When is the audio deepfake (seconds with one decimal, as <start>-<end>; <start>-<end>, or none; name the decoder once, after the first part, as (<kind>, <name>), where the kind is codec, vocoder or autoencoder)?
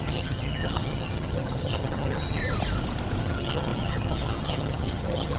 0.0-2.4 (vocoder, HiFi-GAN); 3.2-5.4